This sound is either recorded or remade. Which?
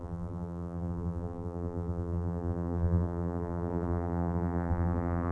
remade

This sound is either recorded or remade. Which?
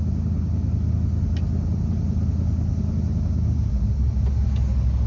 recorded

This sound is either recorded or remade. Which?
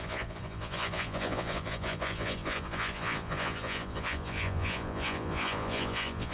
remade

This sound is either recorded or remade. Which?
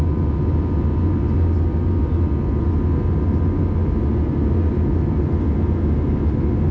recorded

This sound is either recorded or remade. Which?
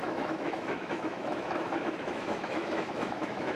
remade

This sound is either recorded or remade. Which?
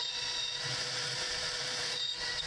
remade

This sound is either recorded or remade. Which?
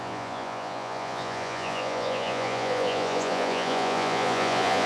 remade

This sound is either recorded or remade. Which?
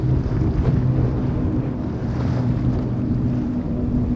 recorded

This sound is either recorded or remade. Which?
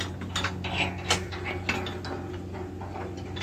recorded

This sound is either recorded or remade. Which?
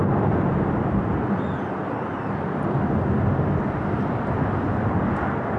recorded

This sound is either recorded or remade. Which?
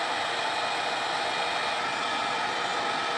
recorded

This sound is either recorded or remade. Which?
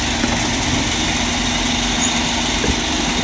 recorded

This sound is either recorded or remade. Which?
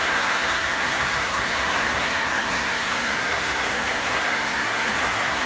remade